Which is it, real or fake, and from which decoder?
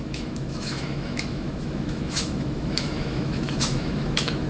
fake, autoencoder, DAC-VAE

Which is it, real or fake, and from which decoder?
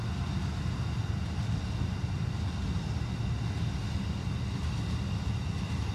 real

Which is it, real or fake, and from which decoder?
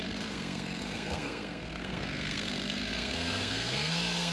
fake, codec, SNAC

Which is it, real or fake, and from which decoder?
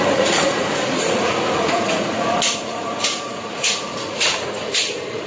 fake, vocoder, Vocos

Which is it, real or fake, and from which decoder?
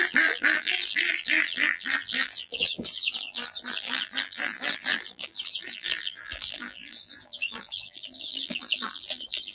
fake, vocoder, BigVGAN v2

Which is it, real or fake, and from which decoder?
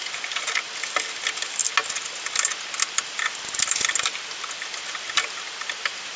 real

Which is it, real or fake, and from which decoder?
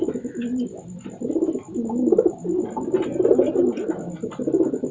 real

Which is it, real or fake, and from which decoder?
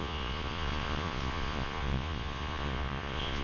fake, vocoder, Vocos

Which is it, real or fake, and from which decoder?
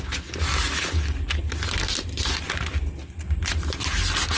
real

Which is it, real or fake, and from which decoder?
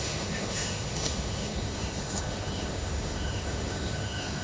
fake, autoencoder, DAC-VAE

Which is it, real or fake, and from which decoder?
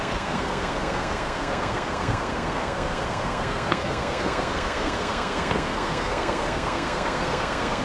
fake, codec, SNAC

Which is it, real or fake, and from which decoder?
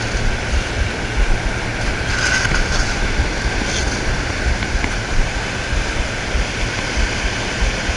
real